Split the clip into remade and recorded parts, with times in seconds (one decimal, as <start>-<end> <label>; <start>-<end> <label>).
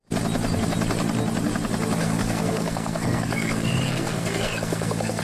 0.0-2.0 recorded; 2.0-5.2 remade